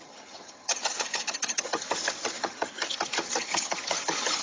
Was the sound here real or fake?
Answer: fake